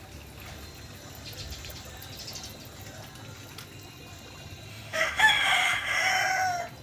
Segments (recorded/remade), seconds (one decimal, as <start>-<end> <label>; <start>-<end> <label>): 0.0-4.7 recorded; 4.7-6.1 remade; 6.1-6.8 recorded